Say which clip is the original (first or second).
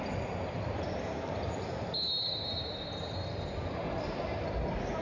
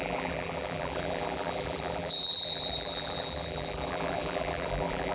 first